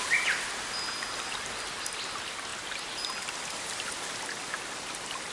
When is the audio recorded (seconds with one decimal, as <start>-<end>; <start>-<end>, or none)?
0.0-5.3